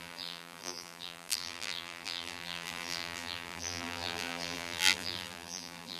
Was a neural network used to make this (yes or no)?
yes